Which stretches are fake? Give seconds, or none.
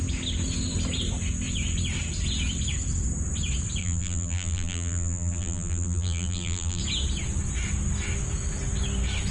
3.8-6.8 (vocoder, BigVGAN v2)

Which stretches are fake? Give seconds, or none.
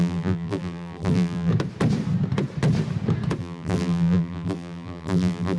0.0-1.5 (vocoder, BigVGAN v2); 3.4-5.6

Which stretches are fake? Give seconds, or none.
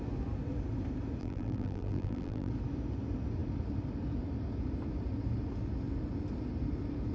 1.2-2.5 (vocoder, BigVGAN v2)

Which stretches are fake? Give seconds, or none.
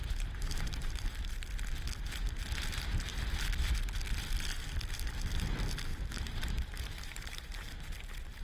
0.0-1.1 (vocoder, BigVGAN v2); 5.9-8.4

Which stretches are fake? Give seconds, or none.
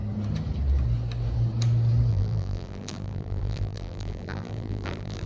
2.1-5.3 (vocoder, BigVGAN v2)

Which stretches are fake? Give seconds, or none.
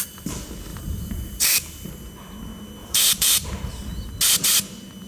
0.7-1.9 (vocoder, BigVGAN v2); 2.8-4.1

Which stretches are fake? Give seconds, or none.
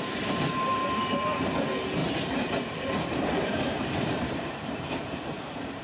2.0-5.8 (vocoder, BigVGAN v2)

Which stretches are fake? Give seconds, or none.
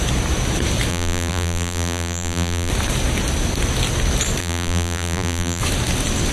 0.9-2.7 (vocoder, BigVGAN v2); 4.4-5.6